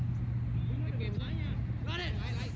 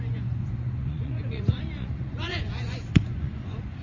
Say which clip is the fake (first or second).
second